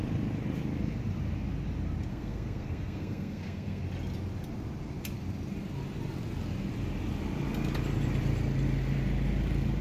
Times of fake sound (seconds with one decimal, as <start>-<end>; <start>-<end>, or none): 2.1-3.8